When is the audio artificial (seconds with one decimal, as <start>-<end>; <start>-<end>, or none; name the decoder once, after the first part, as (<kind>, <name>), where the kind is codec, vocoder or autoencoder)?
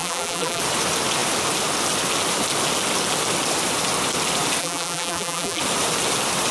0.0-0.6 (vocoder, BigVGAN v2); 4.6-5.6